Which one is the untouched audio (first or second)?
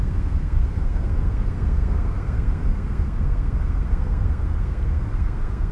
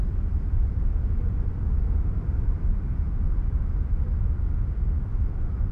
second